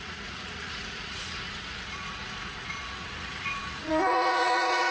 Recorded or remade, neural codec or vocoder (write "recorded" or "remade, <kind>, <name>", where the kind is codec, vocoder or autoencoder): remade, vocoder, Vocos